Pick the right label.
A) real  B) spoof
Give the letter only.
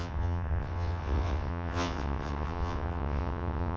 B